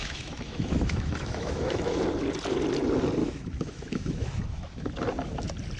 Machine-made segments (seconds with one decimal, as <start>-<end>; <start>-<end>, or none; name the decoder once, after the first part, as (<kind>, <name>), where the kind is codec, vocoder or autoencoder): 0.0-2.0 (autoencoder, DAC-VAE); 3.2-4.9